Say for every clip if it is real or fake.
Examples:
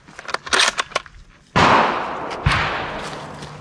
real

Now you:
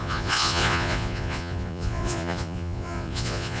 fake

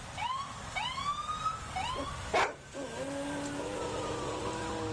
real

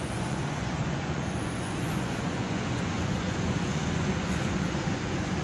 fake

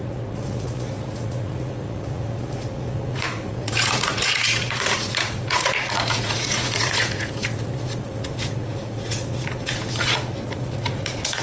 fake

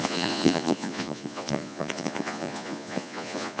fake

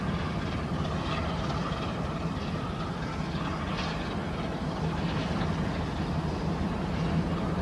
real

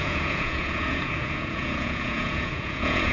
fake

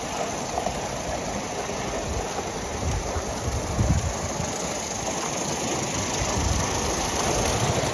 real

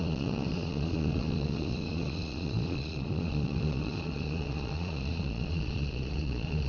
fake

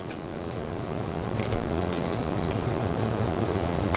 fake